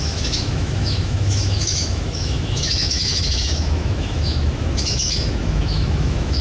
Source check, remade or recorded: remade